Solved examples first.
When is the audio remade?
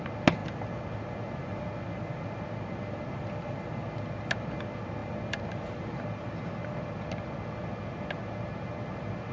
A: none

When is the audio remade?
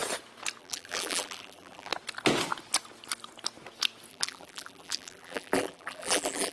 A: 0.6-1.9 (vocoder, BigVGAN v2); 4.1-6.5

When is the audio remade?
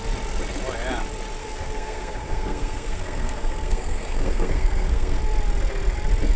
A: 1.4-5.2 (codec, SNAC)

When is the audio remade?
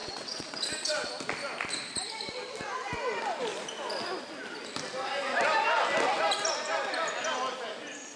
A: 0.0-1.1 (vocoder, WaveNeXt)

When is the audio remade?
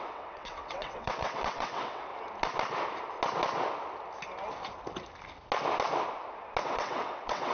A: 0.0-2.1 (vocoder, WaveNeXt); 6.6-7.5